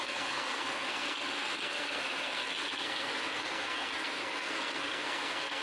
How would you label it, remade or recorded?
remade